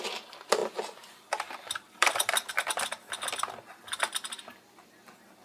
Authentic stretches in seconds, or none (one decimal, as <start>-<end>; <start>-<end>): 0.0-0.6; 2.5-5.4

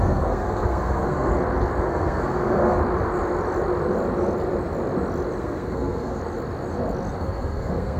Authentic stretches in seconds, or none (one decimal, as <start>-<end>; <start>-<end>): 1.3-1.8; 2.8-5.4; 6.2-7.2

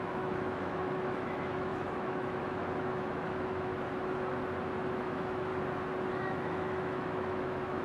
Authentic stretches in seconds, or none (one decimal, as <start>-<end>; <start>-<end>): 3.7-4.9; 5.5-6.1

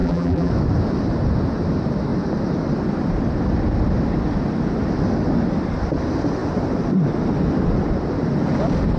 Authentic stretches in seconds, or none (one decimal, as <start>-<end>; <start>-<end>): 0.5-9.0

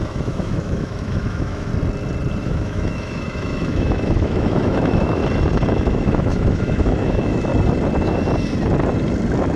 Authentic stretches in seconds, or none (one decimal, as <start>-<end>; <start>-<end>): 1.7-2.4; 5.2-5.7; 7.5-9.6